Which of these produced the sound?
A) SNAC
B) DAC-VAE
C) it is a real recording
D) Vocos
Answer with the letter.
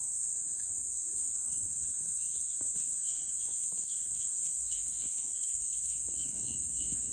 A